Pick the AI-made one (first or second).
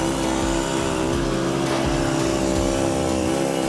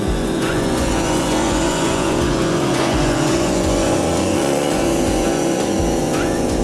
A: second